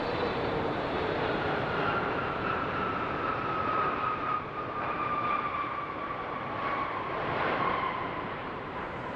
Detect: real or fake fake